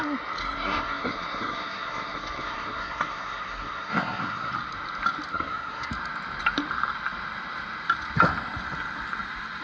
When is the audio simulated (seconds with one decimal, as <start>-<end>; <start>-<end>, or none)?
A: 0.4-4.5; 5.3-5.9